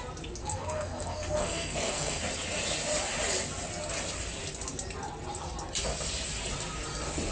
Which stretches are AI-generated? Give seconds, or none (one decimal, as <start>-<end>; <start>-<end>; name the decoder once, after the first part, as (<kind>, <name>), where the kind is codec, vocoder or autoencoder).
0.4-2.2 (codec, SNAC)